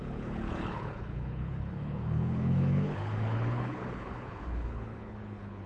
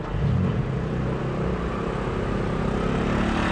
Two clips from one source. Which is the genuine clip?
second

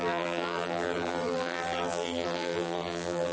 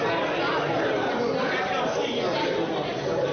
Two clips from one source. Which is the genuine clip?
second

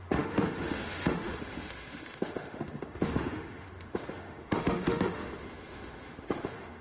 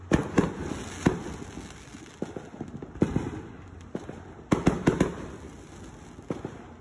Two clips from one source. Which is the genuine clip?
second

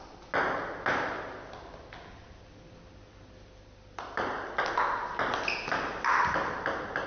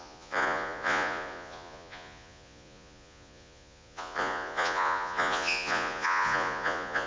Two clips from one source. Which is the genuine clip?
first